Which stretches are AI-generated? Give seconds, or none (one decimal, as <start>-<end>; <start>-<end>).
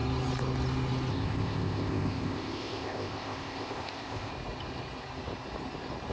1.1-4.3